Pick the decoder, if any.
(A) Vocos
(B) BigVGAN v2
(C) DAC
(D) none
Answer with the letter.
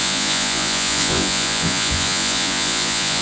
A